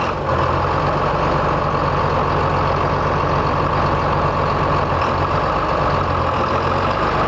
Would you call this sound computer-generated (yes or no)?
no